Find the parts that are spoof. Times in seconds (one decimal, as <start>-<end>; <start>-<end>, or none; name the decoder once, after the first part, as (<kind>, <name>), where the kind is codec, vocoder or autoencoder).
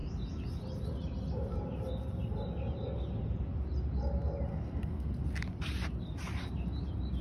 4.5-5.1 (codec, SNAC)